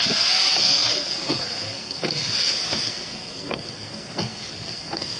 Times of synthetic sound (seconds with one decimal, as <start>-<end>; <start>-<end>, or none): 0.0-5.2